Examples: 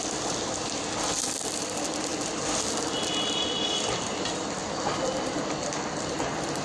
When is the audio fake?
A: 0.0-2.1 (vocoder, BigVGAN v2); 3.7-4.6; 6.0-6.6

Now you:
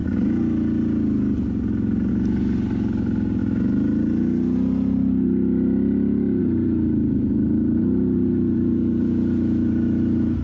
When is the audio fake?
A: 2.1-3.4 (vocoder, BigVGAN v2); 6.4-10.4

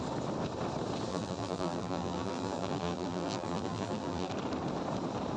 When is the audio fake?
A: 1.1-4.3 (vocoder, BigVGAN v2)

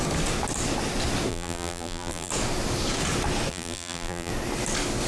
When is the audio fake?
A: 1.3-2.3 (vocoder, BigVGAN v2); 3.5-4.3

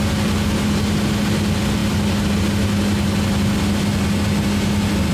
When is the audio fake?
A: none

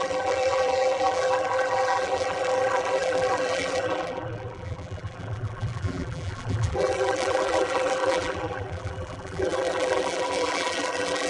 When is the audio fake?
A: 0.0-11.3 (vocoder, BigVGAN v2)

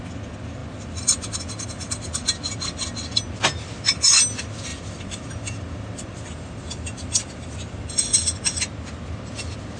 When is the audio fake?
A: 4.7-7.7 (vocoder, BigVGAN v2)

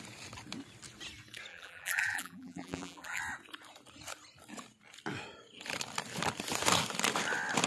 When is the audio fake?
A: 1.5-3.2 (vocoder, BigVGAN v2)